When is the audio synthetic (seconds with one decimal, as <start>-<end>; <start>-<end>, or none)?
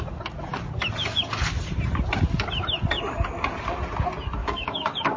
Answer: 4.4-5.2